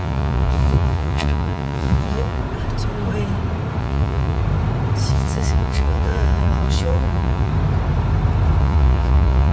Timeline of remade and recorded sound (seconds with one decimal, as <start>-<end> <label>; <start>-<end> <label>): 0.0-2.4 remade; 2.4-3.8 recorded; 3.8-4.4 remade; 4.4-5.1 recorded; 5.1-7.5 remade; 7.5-8.6 recorded; 8.6-9.5 remade